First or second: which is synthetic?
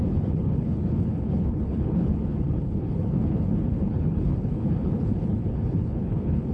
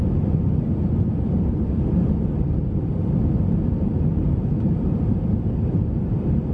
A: first